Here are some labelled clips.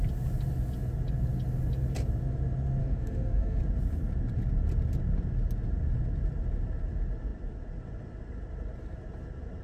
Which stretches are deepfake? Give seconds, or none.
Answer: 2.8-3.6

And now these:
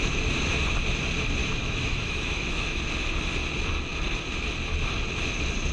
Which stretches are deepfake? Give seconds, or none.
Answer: 1.4-2.8